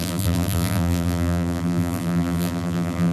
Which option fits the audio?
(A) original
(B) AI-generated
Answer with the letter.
B